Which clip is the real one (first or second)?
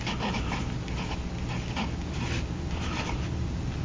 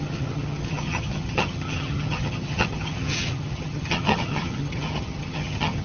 first